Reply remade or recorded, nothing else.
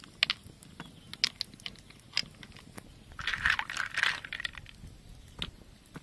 recorded